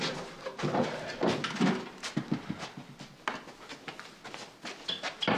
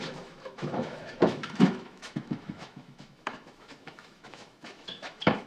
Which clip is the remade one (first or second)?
second